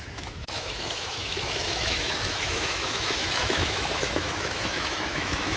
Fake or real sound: fake